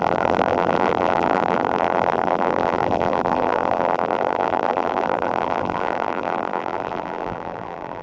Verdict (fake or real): fake